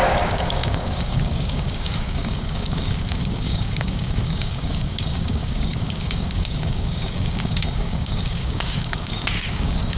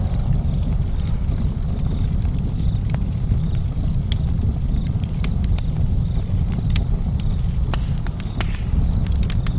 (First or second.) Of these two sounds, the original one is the second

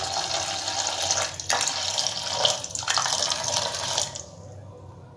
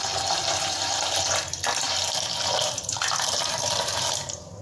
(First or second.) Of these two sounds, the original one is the first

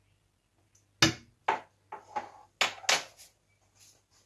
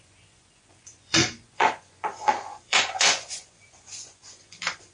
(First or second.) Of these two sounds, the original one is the first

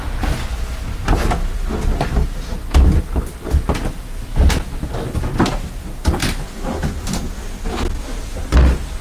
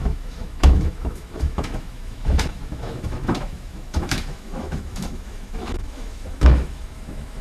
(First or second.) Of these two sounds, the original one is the first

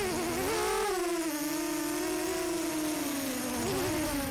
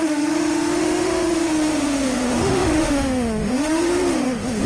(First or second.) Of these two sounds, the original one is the first